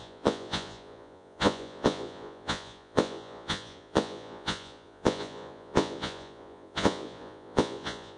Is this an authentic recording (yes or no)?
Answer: no